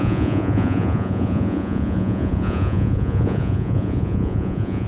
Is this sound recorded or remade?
remade